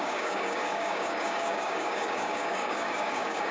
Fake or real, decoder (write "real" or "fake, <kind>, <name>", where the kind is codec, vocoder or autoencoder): fake, codec, DAC